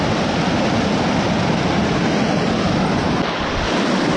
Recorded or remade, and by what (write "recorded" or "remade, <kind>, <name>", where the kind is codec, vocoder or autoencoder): recorded